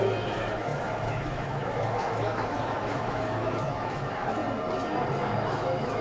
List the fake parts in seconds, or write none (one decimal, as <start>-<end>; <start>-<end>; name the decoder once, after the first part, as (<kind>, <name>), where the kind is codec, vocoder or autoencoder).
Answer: 0.0-4.4 (autoencoder, DAC-VAE); 5.2-6.0